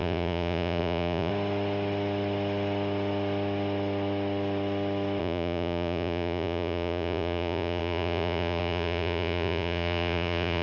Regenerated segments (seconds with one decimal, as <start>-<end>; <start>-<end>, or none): 0.0-1.3; 5.2-10.6